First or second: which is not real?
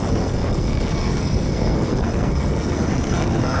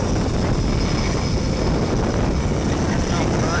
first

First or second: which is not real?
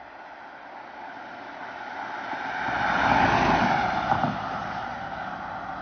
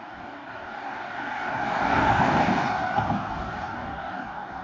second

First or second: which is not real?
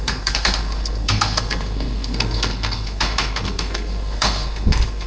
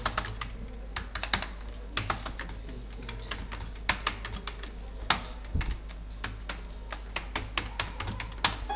first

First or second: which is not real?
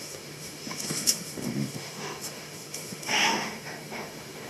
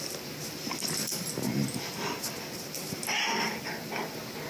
first